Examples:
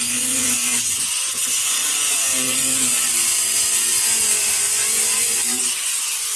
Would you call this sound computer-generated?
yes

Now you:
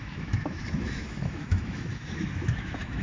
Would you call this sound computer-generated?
yes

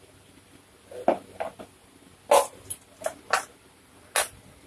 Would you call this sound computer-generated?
no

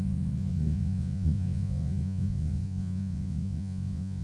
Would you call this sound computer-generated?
yes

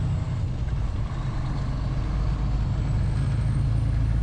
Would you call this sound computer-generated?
no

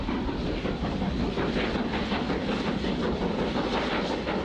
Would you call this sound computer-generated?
no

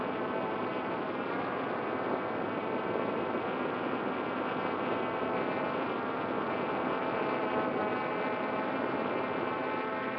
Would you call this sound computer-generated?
no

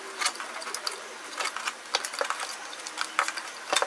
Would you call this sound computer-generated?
no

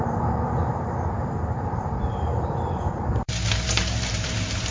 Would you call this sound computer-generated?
yes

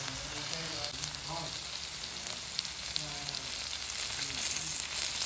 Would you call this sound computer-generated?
no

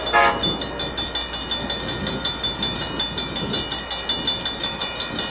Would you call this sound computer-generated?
no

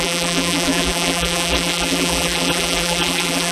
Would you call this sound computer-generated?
yes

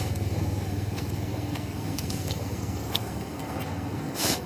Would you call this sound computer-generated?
yes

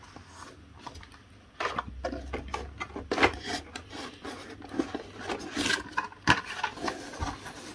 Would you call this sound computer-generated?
no